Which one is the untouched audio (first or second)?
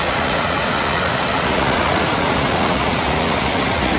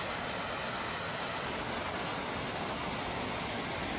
second